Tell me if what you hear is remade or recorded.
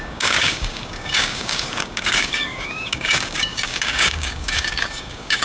remade